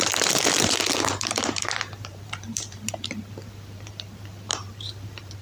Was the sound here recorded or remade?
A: remade